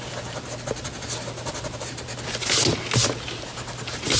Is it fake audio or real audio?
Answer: real